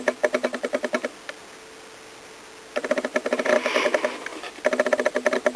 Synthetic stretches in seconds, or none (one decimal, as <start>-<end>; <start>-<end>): 3.1-3.9; 4.3-5.6